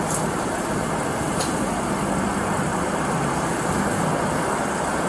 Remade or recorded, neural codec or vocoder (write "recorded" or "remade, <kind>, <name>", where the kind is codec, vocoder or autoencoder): recorded